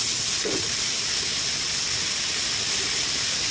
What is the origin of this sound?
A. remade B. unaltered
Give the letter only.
B